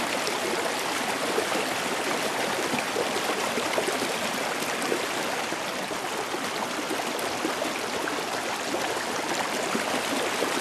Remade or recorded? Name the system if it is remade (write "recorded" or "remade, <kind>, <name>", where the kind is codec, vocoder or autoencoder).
recorded